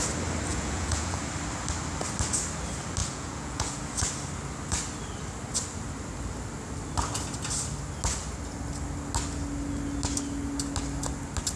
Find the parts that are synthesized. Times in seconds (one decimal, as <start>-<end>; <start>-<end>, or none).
0.5-1.2; 3.0-3.8